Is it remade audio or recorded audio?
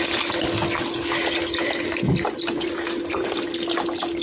recorded